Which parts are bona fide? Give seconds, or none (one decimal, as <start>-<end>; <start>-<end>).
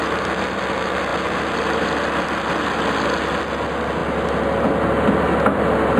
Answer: 0.0-6.0